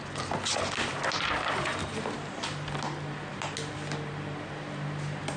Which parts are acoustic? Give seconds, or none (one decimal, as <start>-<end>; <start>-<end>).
0.0-5.4